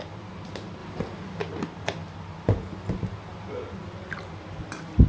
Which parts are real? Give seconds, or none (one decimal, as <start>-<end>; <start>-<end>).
0.0-5.1